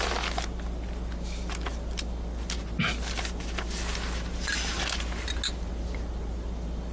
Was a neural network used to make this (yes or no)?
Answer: no